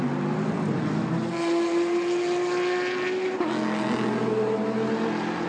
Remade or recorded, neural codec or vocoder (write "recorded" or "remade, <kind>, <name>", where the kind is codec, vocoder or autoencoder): recorded